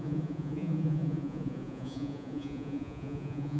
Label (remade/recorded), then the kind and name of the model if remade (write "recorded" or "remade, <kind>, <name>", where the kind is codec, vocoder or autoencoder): remade, vocoder, Vocos